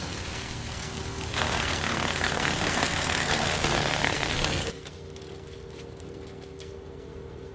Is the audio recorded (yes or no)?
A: no